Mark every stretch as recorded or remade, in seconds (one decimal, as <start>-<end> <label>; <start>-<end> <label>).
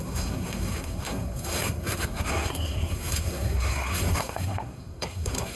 0.0-5.6 remade